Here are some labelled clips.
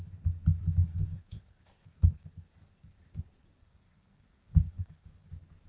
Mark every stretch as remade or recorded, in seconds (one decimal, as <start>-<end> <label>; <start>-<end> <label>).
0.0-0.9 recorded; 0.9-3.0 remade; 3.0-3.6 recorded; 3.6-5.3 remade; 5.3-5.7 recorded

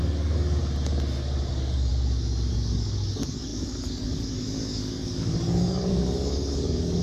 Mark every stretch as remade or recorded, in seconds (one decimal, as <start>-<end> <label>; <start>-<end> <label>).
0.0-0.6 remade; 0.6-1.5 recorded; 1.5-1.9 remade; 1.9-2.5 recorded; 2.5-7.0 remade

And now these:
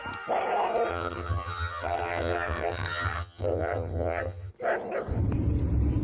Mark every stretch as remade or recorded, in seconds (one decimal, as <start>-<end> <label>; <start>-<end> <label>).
0.0-0.9 recorded; 0.9-4.5 remade; 4.5-6.0 recorded

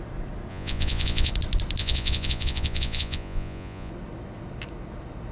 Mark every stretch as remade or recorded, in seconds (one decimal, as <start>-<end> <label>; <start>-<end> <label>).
0.0-0.5 recorded; 0.5-1.3 remade; 1.3-1.8 recorded; 1.8-3.9 remade; 3.9-5.3 recorded

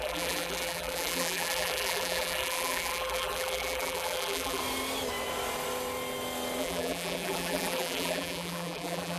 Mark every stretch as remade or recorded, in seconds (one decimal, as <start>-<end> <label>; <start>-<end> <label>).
0.0-4.6 remade; 4.6-6.6 recorded; 6.6-9.2 remade

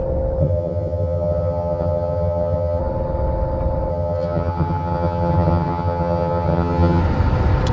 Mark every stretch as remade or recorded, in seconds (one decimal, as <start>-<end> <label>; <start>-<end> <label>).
0.0-0.4 recorded; 0.4-2.8 remade; 2.8-3.9 recorded; 3.9-7.0 remade; 7.0-7.7 recorded

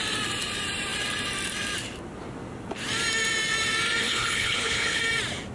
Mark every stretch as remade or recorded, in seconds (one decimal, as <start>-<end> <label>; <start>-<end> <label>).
0.0-4.0 recorded; 4.0-5.0 remade; 5.0-5.5 recorded